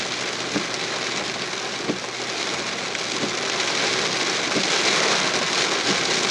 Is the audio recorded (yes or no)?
yes